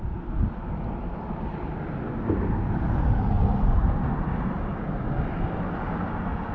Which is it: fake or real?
real